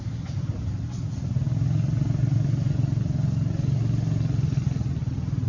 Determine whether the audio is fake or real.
real